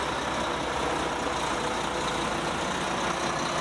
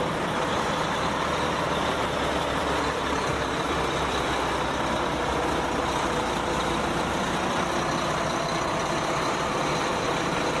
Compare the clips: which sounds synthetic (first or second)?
second